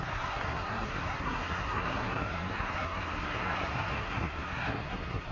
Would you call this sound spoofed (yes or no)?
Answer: yes